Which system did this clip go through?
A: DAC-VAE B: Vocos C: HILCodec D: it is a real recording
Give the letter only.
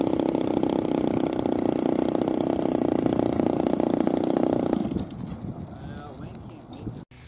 D